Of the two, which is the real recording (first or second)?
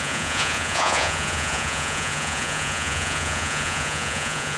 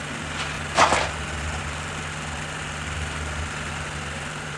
second